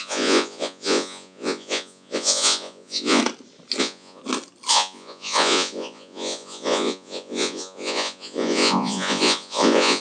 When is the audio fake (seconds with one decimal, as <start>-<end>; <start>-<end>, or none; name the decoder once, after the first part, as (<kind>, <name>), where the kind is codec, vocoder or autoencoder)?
0.0-3.2 (vocoder, Vocos); 3.8-4.2; 4.7-10.0